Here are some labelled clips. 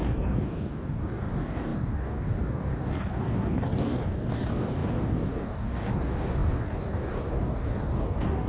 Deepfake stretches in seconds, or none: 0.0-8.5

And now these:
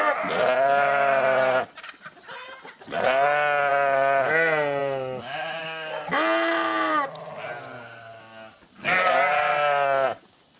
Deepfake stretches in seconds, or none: 5.6-6.1